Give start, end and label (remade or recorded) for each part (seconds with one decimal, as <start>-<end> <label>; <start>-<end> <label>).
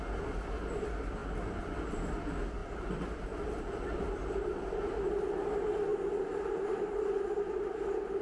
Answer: 0.0-5.9 recorded; 5.9-7.5 remade; 7.5-8.2 recorded